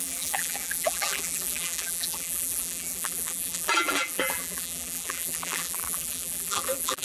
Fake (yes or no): yes